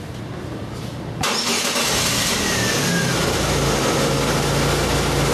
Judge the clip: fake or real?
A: real